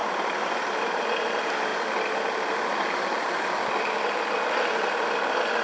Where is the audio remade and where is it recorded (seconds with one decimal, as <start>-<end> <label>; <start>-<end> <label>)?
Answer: 0.0-1.1 remade; 1.1-5.6 recorded